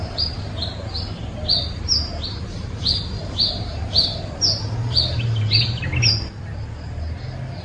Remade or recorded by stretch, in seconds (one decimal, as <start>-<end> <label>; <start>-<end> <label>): 0.0-4.1 remade; 4.1-6.4 recorded; 6.4-7.6 remade